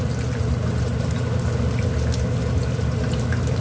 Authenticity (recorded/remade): recorded